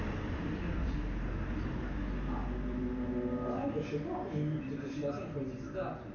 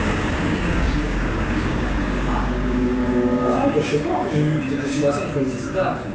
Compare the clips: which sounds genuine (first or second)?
first